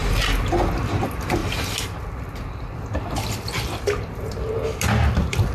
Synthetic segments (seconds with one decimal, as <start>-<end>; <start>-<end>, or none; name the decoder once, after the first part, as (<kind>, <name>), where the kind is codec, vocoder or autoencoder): none